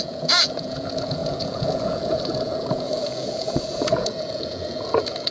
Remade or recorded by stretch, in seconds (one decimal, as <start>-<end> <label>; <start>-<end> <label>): 0.0-5.3 remade